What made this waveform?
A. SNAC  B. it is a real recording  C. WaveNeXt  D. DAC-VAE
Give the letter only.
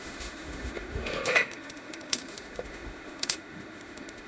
D